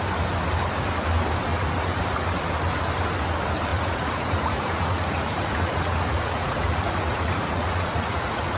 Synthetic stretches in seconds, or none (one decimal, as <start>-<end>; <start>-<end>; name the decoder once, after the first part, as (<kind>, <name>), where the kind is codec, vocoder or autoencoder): 1.5-2.0 (vocoder, Vocos); 3.7-8.6